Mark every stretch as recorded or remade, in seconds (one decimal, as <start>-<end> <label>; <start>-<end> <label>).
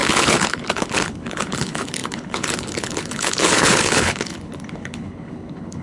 0.0-5.8 remade